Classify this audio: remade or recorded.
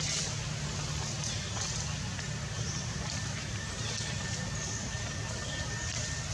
recorded